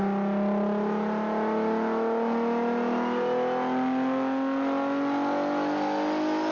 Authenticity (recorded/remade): recorded